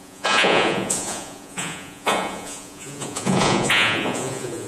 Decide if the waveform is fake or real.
fake